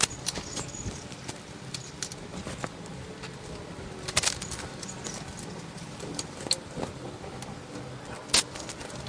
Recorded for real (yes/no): yes